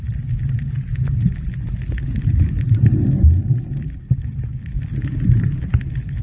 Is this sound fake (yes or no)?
no